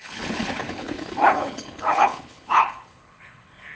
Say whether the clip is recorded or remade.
remade